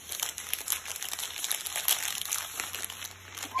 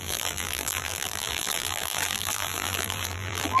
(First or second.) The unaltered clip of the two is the first